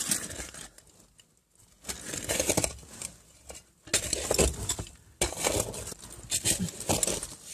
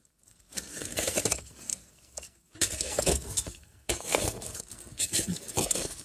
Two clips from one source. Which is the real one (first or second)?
first